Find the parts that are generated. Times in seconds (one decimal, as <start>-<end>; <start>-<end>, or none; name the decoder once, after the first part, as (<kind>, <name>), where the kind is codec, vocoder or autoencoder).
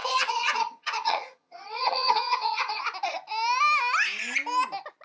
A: 0.0-2.8 (vocoder, HiFi-GAN)